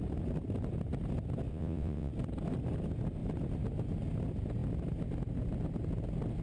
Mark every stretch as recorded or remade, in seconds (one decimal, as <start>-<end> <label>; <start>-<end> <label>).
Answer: 0.0-1.5 recorded; 1.5-2.1 remade; 2.1-6.4 recorded